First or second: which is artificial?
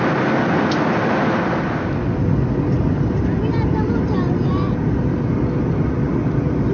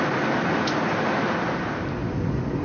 second